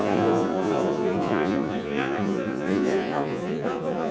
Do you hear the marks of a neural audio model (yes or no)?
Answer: yes